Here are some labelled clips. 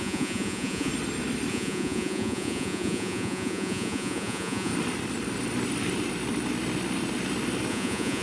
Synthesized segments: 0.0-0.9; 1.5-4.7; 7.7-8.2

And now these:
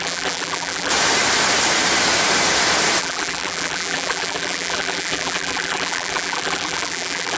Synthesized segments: 0.0-0.9; 3.0-7.4

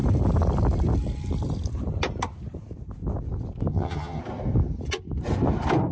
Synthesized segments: 3.7-4.2

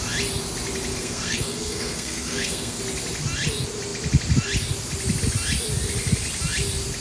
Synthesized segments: 0.9-2.8

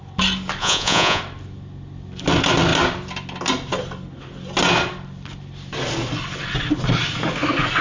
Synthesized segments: 0.6-1.2